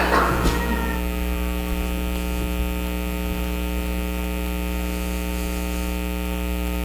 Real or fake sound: real